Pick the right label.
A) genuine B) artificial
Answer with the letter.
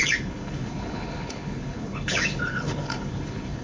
B